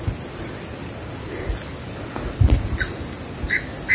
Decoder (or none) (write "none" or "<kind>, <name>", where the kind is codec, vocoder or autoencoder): none